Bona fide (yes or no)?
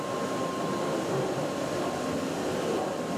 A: no